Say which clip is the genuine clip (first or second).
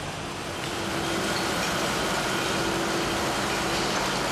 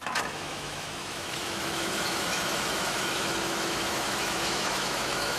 first